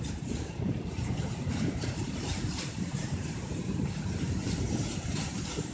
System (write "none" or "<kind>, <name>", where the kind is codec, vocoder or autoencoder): vocoder, BigVGAN v2